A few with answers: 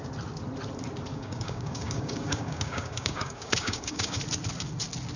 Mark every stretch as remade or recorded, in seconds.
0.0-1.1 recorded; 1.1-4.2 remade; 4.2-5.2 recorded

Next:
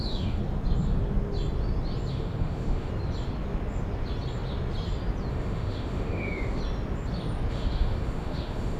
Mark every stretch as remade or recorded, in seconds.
0.0-0.4 remade; 0.4-2.1 recorded; 2.1-2.9 remade; 2.9-5.3 recorded; 5.3-6.6 remade; 6.6-7.5 recorded; 7.5-8.8 remade

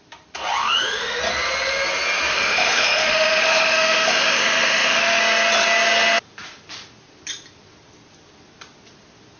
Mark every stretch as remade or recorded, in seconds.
0.0-0.6 recorded; 0.6-1.2 remade; 1.2-2.3 recorded; 2.3-5.2 remade; 5.2-9.4 recorded